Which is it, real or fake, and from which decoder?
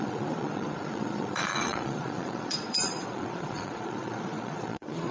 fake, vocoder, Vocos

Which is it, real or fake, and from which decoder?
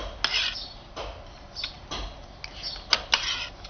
real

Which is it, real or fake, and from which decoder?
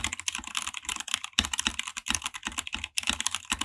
real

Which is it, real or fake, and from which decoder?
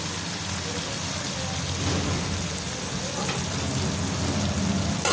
real